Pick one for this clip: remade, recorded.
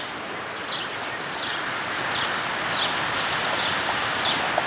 recorded